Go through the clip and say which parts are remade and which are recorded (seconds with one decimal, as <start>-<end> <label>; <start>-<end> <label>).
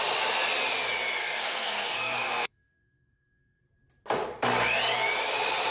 0.0-1.2 recorded; 1.2-3.6 remade; 3.6-5.7 recorded